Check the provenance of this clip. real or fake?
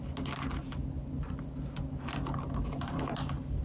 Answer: real